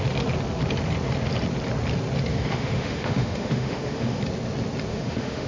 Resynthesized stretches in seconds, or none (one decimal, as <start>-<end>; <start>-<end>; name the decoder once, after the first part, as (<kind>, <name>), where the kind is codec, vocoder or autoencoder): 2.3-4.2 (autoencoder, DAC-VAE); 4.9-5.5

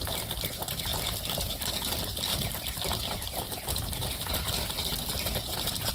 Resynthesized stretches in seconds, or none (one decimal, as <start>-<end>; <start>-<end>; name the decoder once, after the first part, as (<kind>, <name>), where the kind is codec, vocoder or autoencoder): 2.3-5.9 (vocoder, BigVGAN v2)

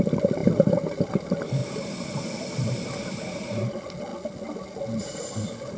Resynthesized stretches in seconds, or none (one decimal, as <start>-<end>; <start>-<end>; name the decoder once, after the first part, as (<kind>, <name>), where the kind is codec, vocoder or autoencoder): 0.4-1.1 (vocoder, BigVGAN v2); 1.6-2.7

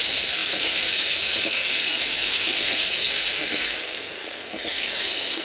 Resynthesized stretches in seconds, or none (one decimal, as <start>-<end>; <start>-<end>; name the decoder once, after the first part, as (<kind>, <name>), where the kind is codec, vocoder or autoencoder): 0.0-5.4 (codec, SNAC)